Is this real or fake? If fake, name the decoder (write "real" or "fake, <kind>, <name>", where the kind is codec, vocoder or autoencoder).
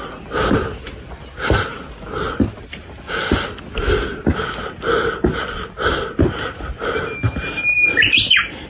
real